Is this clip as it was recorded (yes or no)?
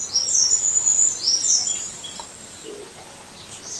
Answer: yes